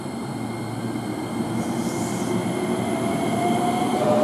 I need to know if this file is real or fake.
real